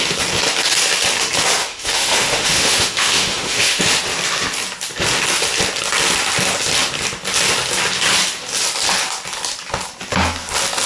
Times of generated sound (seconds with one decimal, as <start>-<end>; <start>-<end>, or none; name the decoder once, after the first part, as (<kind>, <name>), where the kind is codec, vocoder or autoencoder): 1.6-3.8 (autoencoder, DAC-VAE)